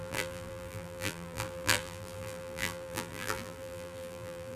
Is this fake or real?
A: fake